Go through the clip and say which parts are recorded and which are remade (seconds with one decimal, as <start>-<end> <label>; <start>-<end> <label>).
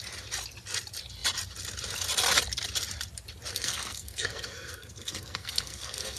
0.0-3.5 recorded; 3.5-6.2 remade